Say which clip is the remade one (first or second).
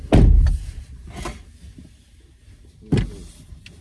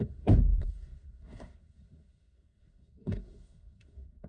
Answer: second